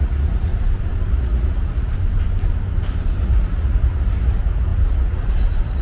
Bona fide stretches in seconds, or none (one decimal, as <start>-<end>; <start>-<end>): 0.5-1.1; 1.9-3.2